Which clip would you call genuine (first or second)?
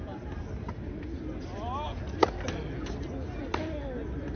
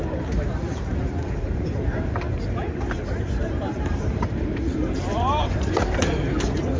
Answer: first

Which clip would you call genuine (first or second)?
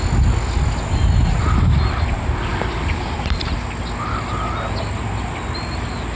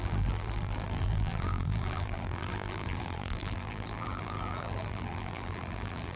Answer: first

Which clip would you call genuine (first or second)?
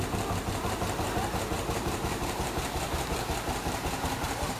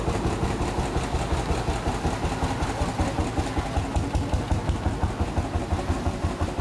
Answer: second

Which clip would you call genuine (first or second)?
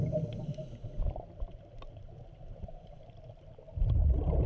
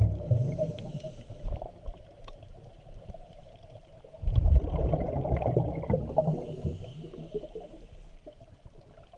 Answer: first